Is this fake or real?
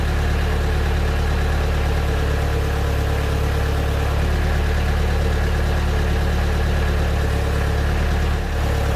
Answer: real